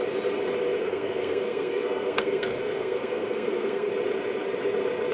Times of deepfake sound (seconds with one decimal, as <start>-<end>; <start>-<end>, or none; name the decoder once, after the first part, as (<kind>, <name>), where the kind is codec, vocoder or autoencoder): 0.8-3.9 (codec, SNAC)

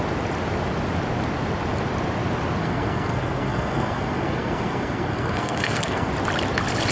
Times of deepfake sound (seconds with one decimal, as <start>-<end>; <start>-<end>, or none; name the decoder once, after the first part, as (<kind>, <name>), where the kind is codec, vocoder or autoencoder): 2.6-6.1 (codec, SNAC)

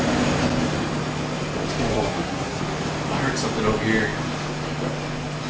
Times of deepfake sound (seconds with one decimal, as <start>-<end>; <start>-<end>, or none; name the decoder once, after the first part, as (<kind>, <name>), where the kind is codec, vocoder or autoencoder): 1.9-2.6 (codec, SNAC)

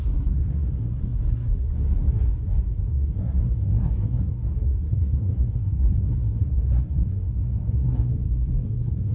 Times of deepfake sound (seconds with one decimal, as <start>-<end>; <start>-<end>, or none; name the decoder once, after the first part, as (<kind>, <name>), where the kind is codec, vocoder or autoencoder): 0.0-9.1 (codec, SNAC)

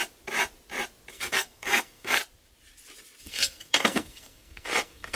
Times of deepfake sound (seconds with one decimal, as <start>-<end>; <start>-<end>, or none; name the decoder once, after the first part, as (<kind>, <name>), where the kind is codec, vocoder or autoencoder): 1.1-2.2 (codec, SNAC); 3.2-5.2

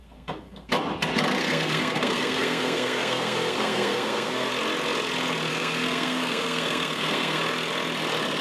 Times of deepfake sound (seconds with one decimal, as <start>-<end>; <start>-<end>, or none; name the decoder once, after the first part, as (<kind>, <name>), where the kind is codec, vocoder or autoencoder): 0.0-0.7 (codec, SNAC); 1.4-4.5; 5.5-7.4